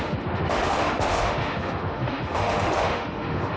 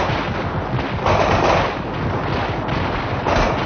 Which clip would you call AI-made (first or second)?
first